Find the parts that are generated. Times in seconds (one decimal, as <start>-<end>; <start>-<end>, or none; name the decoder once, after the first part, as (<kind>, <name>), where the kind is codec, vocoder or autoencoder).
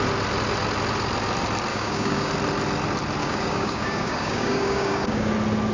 1.7-2.3 (codec, DAC); 3.2-5.3